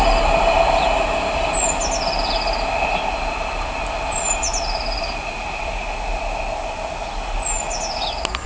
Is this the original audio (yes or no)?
yes